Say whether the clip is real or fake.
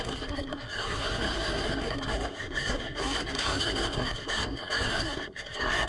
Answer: fake